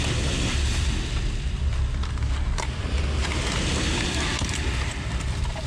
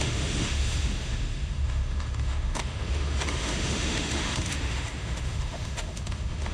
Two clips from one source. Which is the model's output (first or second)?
second